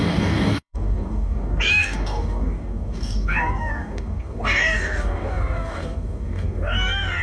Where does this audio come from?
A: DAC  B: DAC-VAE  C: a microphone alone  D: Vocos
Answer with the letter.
A